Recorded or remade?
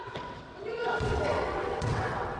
remade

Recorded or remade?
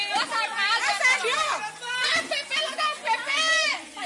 recorded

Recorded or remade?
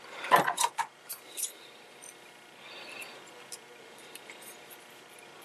recorded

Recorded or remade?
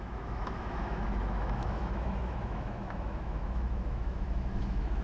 remade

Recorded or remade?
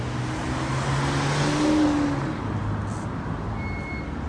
recorded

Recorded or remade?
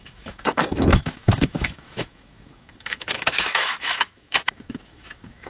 remade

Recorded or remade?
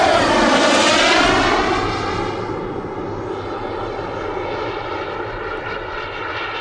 recorded